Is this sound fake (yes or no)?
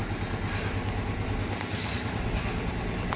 no